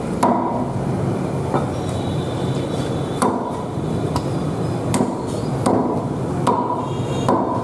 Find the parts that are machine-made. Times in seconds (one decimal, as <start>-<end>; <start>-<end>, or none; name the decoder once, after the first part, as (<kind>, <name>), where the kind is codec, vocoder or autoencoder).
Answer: none